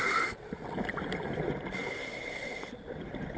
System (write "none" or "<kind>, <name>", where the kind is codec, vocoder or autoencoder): none